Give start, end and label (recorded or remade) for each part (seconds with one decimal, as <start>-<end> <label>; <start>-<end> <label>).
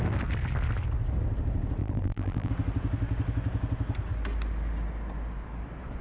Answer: 0.0-1.8 recorded; 1.8-2.5 remade; 2.5-6.0 recorded